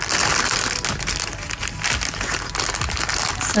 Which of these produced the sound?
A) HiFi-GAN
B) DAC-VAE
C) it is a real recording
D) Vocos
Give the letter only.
C